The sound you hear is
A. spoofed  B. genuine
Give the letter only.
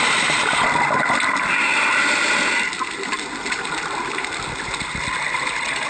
B